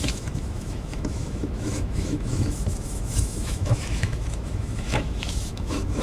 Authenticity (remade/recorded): remade